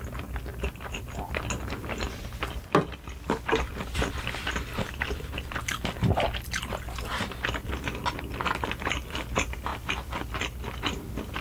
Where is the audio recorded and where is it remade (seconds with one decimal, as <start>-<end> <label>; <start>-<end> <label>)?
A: 0.0-11.4 recorded